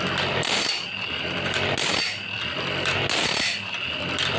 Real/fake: real